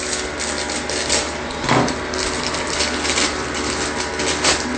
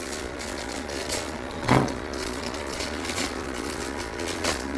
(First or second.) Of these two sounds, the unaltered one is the first